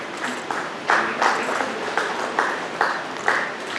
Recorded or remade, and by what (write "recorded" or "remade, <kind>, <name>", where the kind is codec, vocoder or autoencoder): recorded